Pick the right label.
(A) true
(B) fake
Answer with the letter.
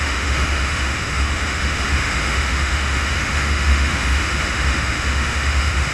B